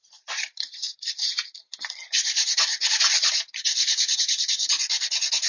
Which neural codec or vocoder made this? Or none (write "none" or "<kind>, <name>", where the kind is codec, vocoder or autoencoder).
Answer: vocoder, BigVGAN v2